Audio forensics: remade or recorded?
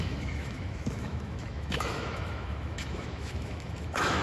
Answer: remade